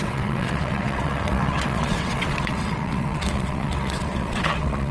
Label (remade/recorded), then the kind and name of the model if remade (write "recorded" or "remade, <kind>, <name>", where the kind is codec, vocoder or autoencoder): remade, vocoder, WaveNeXt